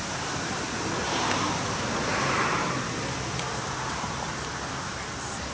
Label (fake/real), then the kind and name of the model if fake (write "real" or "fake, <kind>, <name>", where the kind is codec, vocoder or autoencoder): real